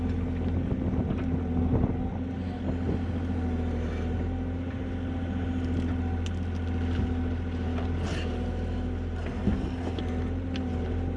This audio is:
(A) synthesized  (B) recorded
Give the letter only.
B